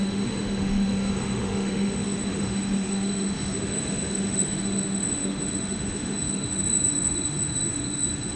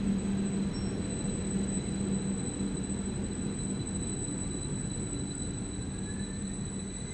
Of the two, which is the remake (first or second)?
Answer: first